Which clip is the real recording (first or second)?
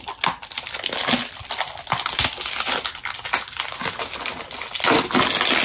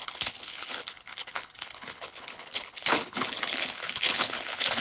first